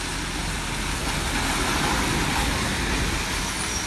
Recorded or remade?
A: recorded